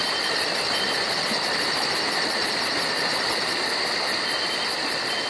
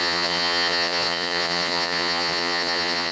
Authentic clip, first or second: first